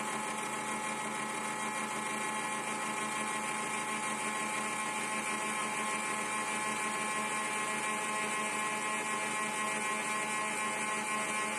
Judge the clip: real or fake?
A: real